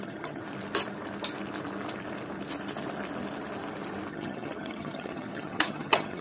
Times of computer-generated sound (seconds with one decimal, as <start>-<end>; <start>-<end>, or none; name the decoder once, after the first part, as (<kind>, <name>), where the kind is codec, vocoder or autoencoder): 0.0-0.4 (vocoder, HiFi-GAN); 4.1-6.2